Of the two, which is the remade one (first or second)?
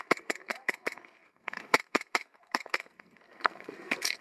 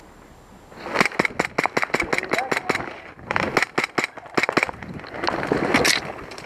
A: first